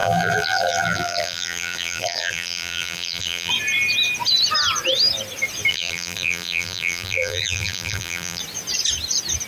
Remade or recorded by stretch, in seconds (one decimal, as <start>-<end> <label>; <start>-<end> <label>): 0.0-3.5 remade; 3.5-5.7 recorded; 5.7-8.4 remade; 8.4-9.5 recorded